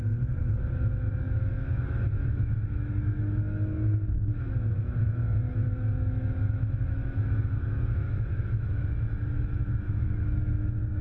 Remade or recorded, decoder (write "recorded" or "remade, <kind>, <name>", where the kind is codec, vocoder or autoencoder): remade, autoencoder, DAC-VAE